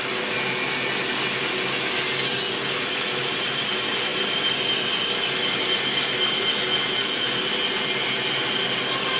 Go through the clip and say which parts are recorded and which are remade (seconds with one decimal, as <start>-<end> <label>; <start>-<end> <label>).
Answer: 0.0-9.2 recorded